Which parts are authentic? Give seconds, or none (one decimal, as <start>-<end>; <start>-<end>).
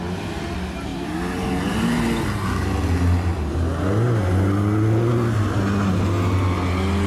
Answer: 0.0-7.1